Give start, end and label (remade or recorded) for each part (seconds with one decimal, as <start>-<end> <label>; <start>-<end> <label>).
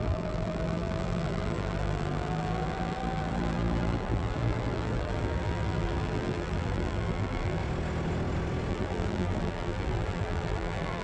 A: 0.0-7.6 remade; 7.6-8.7 recorded; 8.7-11.0 remade